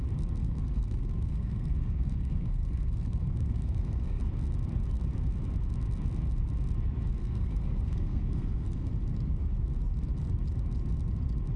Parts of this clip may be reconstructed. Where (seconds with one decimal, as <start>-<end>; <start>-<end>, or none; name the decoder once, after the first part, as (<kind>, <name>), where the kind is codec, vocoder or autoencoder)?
0.4-4.2 (codec, SNAC); 7.2-8.9

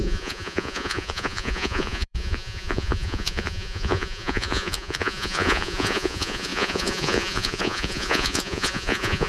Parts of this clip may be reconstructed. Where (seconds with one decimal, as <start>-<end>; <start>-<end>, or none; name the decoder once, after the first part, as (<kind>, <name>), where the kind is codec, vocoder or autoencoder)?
0.0-9.3 (vocoder, Vocos)